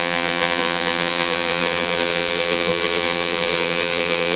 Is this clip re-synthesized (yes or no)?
yes